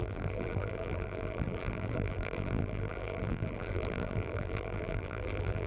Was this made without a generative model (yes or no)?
no